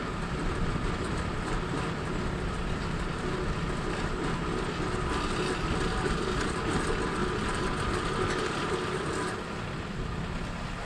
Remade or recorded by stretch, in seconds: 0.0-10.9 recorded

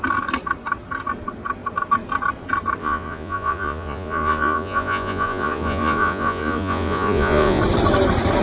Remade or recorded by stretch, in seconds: 0.0-2.8 recorded; 2.8-7.6 remade; 7.6-8.4 recorded